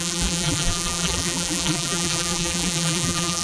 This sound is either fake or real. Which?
fake